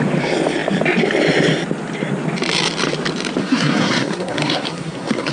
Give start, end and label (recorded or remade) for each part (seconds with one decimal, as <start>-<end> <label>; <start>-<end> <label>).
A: 0.0-3.4 recorded; 3.4-5.3 remade